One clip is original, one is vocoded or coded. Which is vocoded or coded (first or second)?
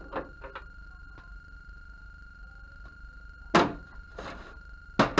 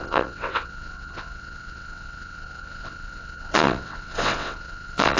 second